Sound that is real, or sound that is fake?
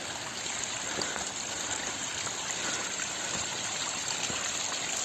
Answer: real